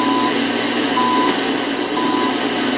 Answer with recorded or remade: recorded